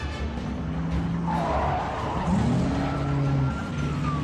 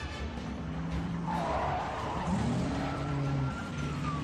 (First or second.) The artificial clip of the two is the second